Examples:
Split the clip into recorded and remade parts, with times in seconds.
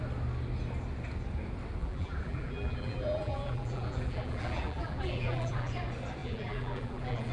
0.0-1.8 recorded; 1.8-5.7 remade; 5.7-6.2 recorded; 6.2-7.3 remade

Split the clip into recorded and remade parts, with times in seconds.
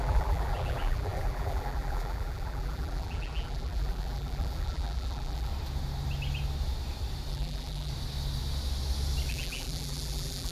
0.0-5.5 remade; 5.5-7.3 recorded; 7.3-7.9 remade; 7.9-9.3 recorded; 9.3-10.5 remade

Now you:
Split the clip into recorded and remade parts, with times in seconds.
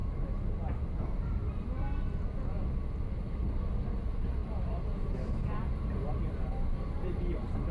0.0-1.5 remade; 1.5-4.4 recorded; 4.4-7.7 remade